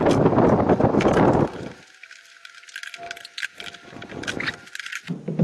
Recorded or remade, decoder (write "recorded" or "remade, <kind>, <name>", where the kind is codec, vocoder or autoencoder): recorded